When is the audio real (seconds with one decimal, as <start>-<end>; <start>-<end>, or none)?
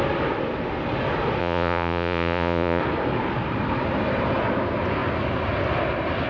0.0-1.4; 2.8-6.3